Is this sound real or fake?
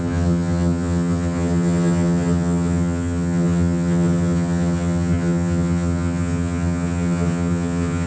fake